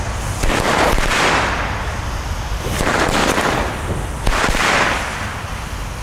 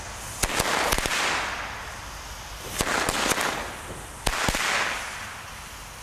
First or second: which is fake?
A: first